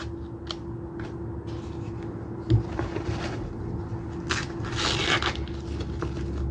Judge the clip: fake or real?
real